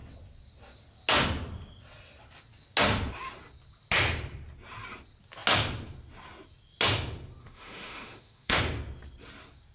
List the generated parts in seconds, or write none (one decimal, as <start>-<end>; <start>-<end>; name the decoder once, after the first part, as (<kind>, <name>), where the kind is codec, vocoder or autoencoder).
7.4-8.6 (autoencoder, DAC-VAE)